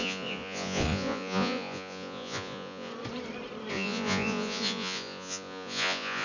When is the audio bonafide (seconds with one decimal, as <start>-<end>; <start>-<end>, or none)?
2.9-3.7